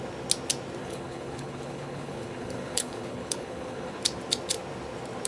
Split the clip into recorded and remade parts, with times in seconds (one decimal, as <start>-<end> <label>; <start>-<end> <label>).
0.0-0.8 recorded; 0.8-4.0 remade; 4.0-5.3 recorded